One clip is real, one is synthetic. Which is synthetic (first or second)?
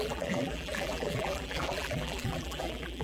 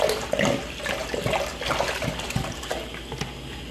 first